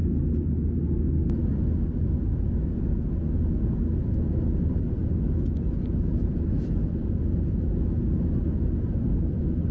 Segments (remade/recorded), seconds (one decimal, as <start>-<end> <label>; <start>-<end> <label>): 0.0-9.7 recorded